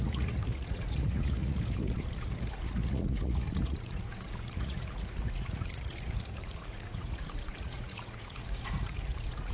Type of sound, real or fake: fake